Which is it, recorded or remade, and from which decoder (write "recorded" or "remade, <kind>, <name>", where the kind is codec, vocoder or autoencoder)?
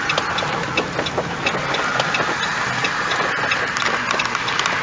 recorded